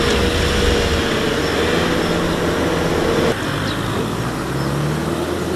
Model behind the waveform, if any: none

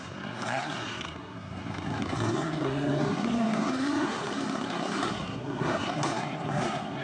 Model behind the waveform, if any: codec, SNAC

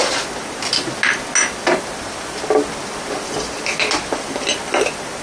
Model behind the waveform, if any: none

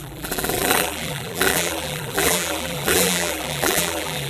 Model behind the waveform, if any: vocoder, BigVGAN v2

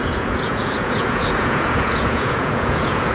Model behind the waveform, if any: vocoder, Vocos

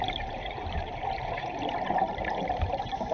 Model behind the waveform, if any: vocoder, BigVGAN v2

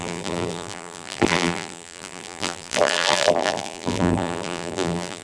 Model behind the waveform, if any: vocoder, BigVGAN v2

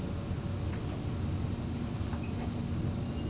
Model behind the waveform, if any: none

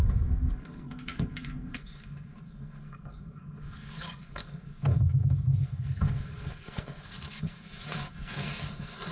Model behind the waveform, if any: codec, SNAC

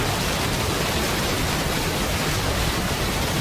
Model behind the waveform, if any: none